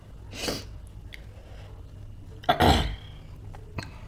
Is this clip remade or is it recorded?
recorded